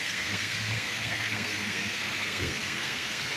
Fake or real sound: fake